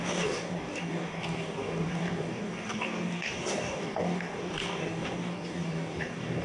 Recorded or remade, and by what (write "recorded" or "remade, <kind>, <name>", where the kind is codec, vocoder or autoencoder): remade, codec, DAC